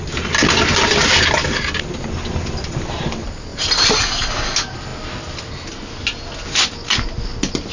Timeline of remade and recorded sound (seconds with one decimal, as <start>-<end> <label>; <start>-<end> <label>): 0.0-3.5 recorded; 3.5-4.1 remade; 4.1-7.7 recorded